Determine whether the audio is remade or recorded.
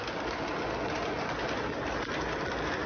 recorded